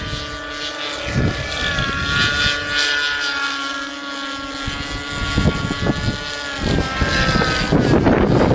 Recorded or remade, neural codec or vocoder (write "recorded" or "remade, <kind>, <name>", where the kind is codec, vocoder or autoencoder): recorded